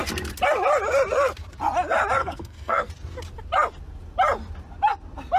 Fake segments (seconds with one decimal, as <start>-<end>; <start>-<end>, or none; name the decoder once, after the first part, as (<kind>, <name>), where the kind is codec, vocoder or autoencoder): 2.2-2.9 (codec, SNAC)